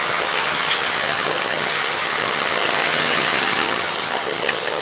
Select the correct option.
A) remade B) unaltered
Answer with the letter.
A